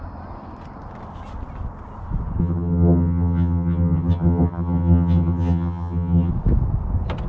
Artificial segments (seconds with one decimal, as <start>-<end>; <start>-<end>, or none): 2.4-6.3